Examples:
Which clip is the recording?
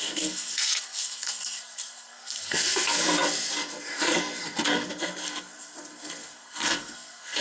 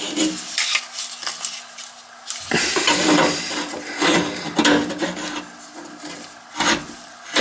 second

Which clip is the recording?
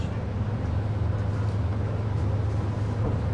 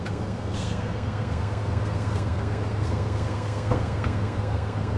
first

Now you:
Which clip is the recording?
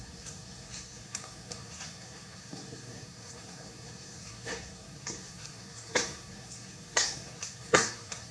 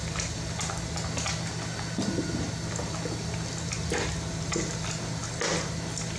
second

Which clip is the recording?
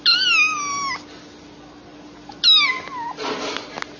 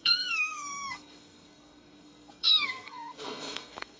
first